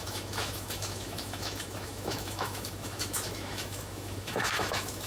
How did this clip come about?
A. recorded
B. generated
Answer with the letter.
B